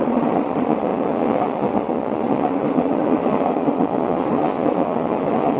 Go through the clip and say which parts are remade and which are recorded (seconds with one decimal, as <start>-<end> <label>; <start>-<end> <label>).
0.0-5.6 remade